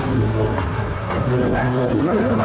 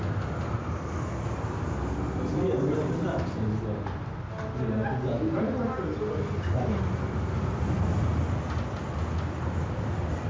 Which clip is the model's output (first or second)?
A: first